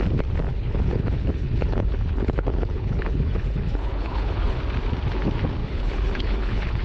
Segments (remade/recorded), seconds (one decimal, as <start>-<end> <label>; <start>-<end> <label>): 0.0-0.5 recorded; 0.5-4.6 remade; 4.6-5.6 recorded; 5.6-6.8 remade